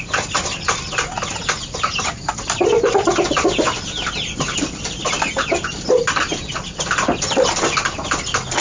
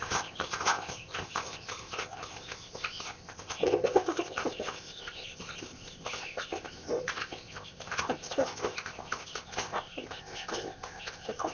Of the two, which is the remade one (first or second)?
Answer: second